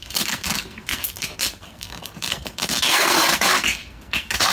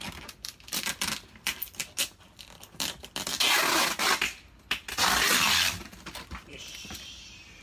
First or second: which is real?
second